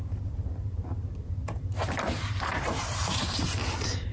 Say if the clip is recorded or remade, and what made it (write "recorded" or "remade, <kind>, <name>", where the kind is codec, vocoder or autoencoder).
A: remade, vocoder, BigVGAN v2